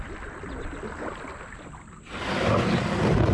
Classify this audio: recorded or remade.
recorded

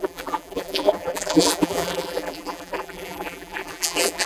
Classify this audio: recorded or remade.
remade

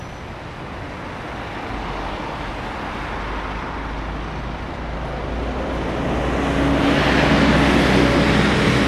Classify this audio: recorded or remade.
recorded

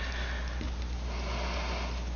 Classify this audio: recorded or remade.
recorded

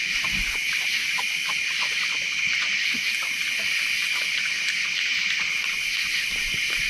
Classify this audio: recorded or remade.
recorded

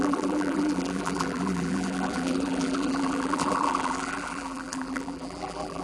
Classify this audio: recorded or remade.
remade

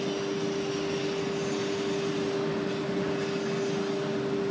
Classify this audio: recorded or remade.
recorded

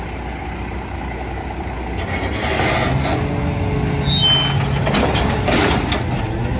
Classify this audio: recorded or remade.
recorded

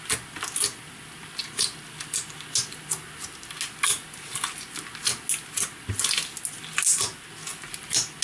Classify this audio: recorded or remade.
recorded